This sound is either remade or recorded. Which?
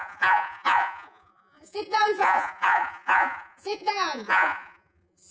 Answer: remade